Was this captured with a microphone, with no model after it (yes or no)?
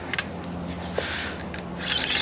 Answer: yes